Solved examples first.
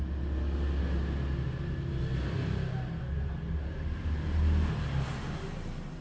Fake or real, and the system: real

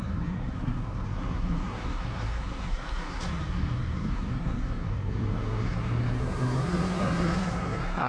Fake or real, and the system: fake, codec, SNAC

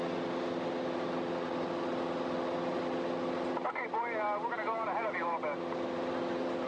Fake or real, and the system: real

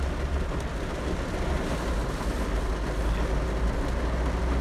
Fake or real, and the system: real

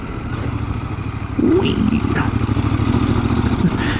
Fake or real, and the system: real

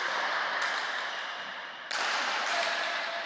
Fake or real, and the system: fake, vocoder, BigVGAN v2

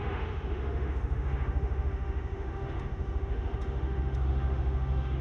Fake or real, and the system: fake, autoencoder, DAC-VAE